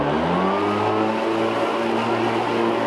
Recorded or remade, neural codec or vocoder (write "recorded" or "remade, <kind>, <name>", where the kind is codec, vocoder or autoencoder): recorded